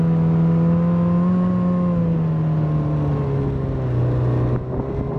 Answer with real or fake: real